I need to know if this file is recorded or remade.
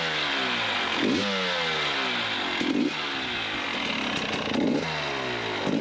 recorded